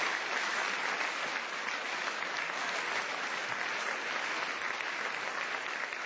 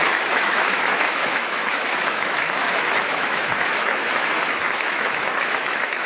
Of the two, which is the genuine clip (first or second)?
first